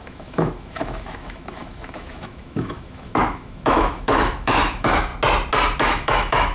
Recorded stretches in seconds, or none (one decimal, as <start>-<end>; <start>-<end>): 5.1-5.8